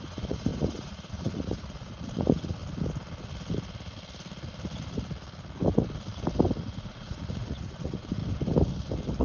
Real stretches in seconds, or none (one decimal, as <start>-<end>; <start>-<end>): 2.6-6.6; 8.2-9.2